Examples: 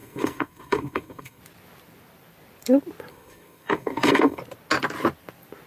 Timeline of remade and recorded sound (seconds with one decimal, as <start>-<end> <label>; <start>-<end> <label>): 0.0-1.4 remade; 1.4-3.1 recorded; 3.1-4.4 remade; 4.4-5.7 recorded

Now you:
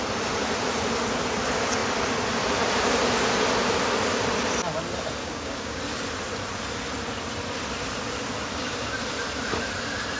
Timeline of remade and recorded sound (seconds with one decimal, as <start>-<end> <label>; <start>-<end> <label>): 0.0-5.2 recorded; 5.2-5.8 remade; 5.8-10.2 recorded

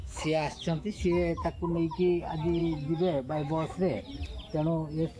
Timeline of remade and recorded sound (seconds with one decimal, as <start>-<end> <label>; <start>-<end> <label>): 0.0-1.0 remade; 1.0-2.6 recorded; 2.6-4.0 remade; 4.0-5.2 recorded

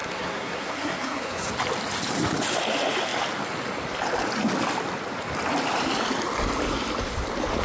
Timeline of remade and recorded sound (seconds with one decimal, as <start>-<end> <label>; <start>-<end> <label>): 0.0-1.5 remade; 1.5-7.6 recorded

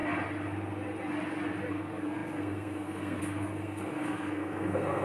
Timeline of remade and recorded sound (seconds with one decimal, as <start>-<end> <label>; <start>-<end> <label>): 0.0-1.7 recorded; 1.7-5.0 remade